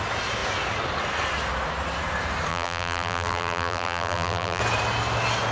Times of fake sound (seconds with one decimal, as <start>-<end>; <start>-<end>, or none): 2.5-4.6